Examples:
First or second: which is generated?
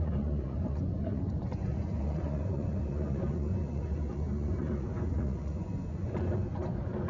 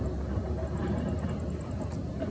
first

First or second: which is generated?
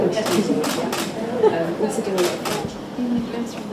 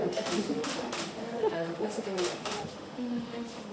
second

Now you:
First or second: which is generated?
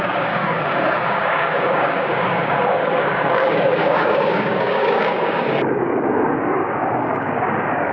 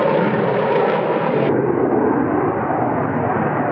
first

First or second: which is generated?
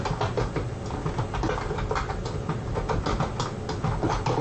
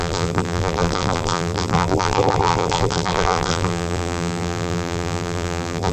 second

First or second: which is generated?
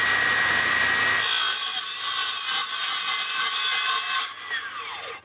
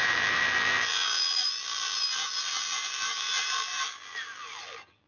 second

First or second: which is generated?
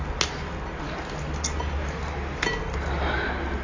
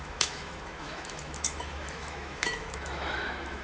second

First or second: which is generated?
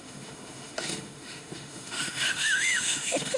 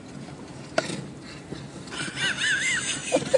first